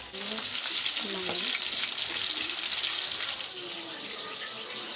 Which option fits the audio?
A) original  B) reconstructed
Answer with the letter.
A